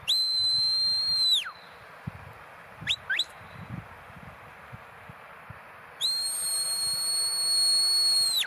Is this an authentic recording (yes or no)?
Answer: yes